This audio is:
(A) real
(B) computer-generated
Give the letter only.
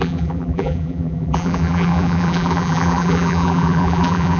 B